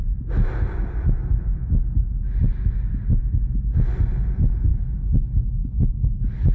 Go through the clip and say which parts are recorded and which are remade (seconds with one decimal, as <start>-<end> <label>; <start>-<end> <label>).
0.0-4.7 recorded; 4.7-6.5 remade